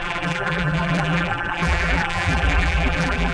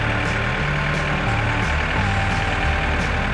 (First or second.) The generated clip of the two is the first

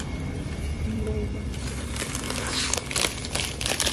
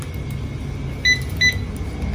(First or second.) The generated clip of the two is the first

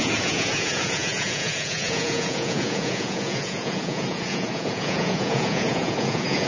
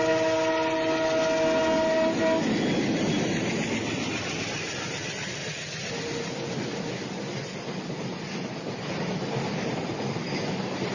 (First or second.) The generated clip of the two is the first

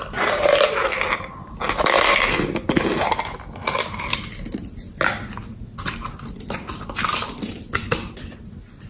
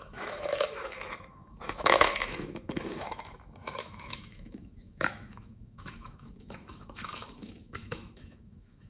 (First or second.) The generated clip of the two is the second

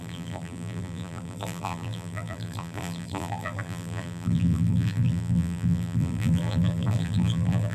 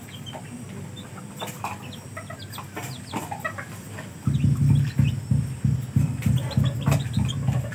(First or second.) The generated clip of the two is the first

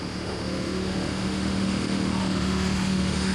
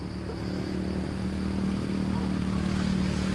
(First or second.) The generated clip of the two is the first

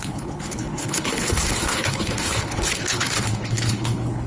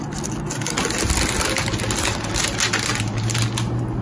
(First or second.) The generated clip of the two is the first